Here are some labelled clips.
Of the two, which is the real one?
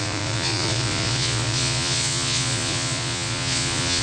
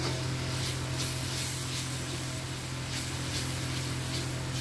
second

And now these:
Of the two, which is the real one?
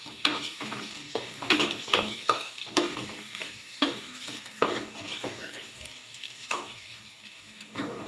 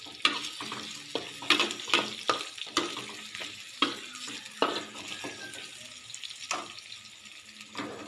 second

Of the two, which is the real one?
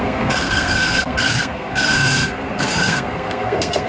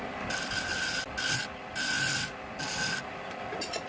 second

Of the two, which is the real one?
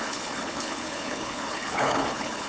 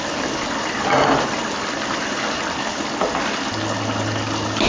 second